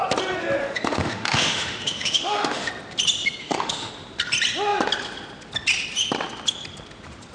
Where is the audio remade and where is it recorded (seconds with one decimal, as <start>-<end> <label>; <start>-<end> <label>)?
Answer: 0.0-0.6 recorded; 0.6-2.7 remade; 2.7-3.4 recorded; 3.4-3.9 remade; 3.9-7.3 recorded